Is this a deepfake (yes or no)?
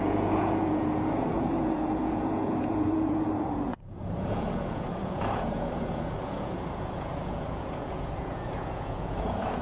yes